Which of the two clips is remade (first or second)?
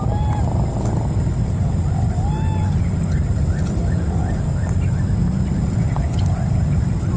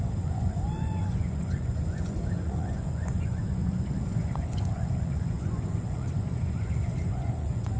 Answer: second